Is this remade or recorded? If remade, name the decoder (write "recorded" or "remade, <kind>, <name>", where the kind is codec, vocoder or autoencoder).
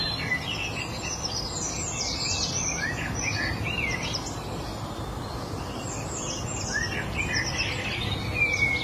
recorded